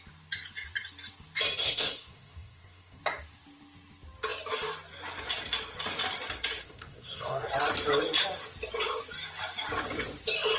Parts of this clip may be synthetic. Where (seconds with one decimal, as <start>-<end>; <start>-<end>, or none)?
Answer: 1.6-3.0; 6.6-7.5